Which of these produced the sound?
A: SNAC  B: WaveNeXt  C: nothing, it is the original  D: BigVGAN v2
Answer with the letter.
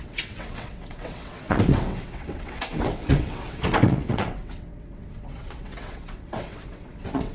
B